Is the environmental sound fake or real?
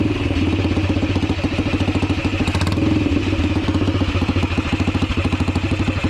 real